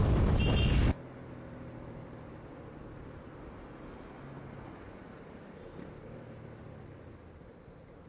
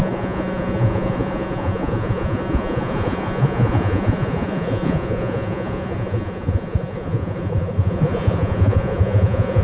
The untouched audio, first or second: first